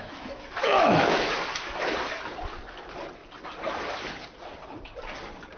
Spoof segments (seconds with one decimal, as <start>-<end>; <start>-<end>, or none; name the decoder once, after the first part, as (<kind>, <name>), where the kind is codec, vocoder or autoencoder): 0.0-1.9 (autoencoder, DAC-VAE)